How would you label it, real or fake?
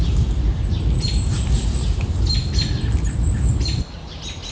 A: real